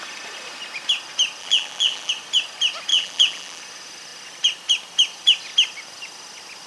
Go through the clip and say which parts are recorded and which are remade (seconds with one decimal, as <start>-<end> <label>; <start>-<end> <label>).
0.0-1.4 recorded; 1.4-2.1 remade; 2.1-2.9 recorded; 2.9-3.6 remade; 3.6-6.7 recorded